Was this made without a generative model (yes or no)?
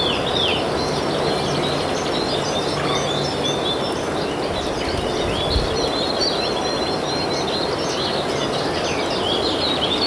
yes